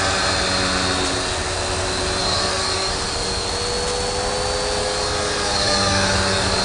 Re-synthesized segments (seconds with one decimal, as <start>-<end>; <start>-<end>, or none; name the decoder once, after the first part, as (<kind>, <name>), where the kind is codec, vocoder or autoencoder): 2.2-3.5 (codec, DAC); 4.8-6.6